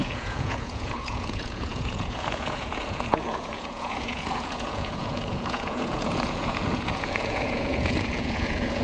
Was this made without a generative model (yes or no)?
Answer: no